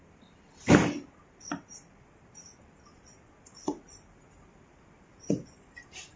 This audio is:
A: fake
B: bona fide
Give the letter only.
B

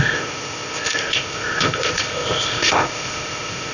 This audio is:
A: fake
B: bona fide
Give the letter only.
A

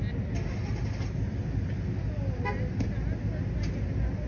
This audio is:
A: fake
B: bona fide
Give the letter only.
B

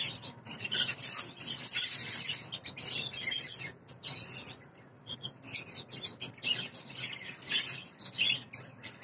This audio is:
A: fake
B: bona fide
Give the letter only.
B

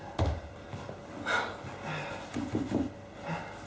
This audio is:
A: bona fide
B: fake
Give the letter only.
A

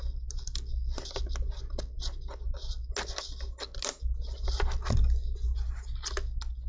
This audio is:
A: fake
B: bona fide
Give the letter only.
B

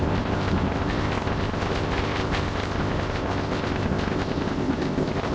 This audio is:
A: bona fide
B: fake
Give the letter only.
B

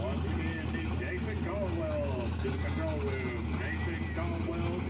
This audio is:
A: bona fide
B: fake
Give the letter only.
A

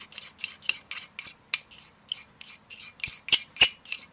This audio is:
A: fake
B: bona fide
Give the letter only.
B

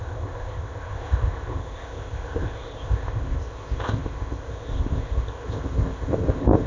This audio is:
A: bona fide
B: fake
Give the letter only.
B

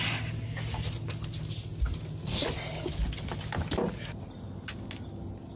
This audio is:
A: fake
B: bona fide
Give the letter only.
B